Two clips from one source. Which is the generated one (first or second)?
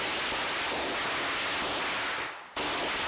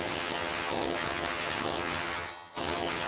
second